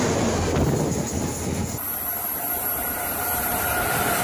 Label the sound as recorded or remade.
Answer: recorded